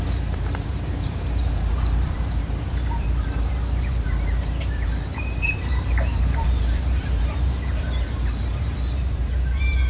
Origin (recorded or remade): remade